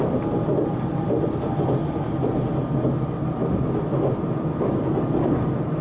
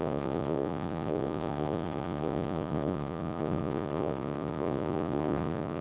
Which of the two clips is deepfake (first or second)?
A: second